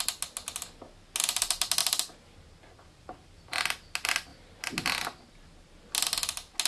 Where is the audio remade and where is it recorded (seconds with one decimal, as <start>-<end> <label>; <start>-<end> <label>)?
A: 0.0-6.7 recorded